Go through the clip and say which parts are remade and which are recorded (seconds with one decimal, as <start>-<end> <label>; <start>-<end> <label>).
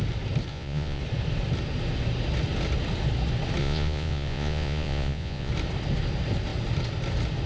0.0-0.5 recorded; 0.5-1.0 remade; 1.0-3.6 recorded; 3.6-5.5 remade; 5.5-7.5 recorded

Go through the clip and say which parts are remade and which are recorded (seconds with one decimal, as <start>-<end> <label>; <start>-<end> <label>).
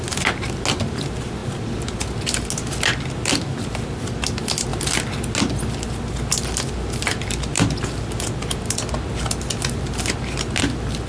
0.0-11.1 recorded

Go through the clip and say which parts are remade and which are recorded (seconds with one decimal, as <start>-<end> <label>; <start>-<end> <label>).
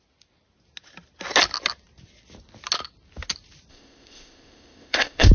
0.0-3.7 recorded; 3.7-5.3 remade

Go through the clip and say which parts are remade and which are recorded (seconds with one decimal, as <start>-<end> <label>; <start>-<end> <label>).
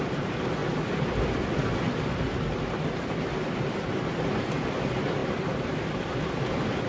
0.0-5.2 recorded; 5.2-6.1 remade; 6.1-6.9 recorded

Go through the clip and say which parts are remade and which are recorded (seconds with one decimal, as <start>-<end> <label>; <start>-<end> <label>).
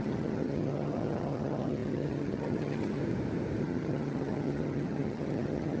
0.0-3.0 remade; 3.0-3.6 recorded; 3.6-5.8 remade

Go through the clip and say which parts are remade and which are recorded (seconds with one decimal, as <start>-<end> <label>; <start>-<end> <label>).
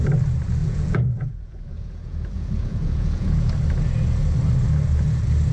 0.0-0.6 recorded; 0.6-3.5 remade; 3.5-5.5 recorded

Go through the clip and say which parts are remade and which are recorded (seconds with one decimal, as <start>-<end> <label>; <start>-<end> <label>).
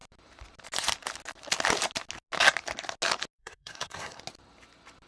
0.0-3.4 recorded; 3.4-4.2 remade; 4.2-5.1 recorded